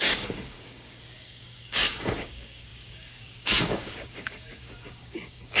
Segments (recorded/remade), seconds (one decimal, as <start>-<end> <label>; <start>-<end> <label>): 0.0-5.6 remade